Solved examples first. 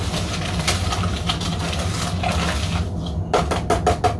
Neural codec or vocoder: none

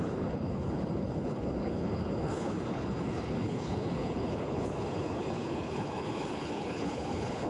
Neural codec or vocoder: codec, HILCodec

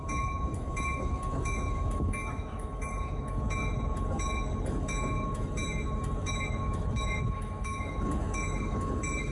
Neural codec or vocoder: autoencoder, DAC-VAE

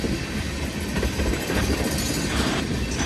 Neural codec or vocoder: none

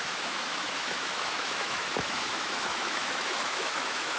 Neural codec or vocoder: autoencoder, DAC-VAE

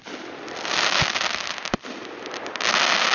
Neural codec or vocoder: none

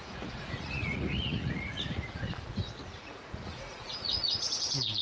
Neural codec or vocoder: vocoder, Vocos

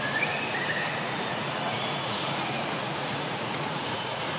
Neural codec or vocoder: vocoder, Vocos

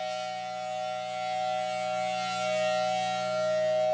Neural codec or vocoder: none